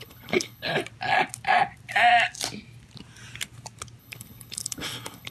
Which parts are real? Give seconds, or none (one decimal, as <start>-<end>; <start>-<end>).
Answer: 0.8-4.0